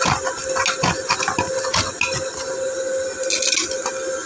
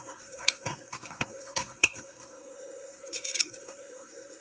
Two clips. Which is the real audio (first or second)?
first